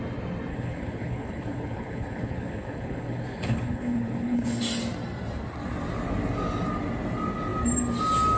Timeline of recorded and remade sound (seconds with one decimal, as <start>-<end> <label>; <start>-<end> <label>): 0.0-0.5 recorded; 0.5-4.6 remade; 4.6-8.4 recorded